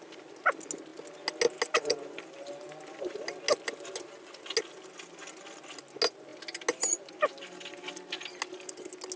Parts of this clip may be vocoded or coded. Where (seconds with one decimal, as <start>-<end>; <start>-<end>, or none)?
none